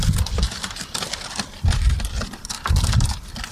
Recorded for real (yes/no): yes